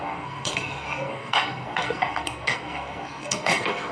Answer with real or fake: fake